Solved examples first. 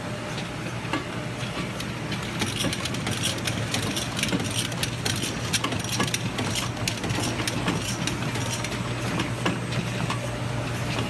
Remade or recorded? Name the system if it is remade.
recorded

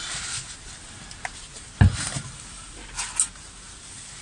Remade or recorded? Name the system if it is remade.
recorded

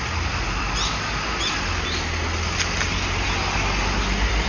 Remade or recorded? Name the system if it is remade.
recorded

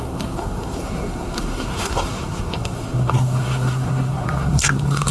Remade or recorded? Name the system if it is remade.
remade, codec, SNAC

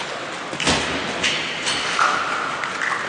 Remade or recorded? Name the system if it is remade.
recorded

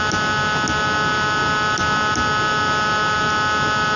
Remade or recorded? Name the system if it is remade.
recorded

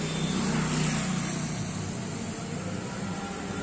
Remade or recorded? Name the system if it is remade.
recorded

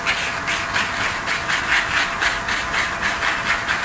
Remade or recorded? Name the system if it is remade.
recorded